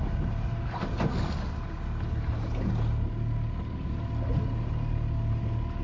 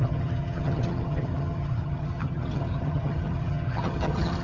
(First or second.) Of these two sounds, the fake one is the second